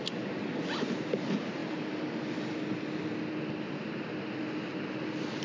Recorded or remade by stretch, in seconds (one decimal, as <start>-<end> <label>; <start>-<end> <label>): 0.0-5.4 recorded